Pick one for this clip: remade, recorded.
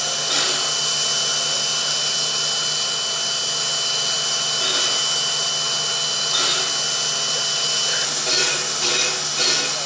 recorded